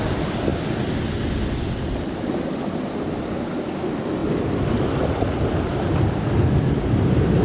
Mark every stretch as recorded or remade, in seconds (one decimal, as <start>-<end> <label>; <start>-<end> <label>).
0.0-7.4 recorded